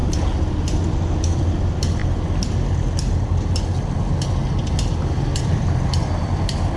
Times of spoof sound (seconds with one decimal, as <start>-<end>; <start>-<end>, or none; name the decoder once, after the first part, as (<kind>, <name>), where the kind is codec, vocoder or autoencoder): none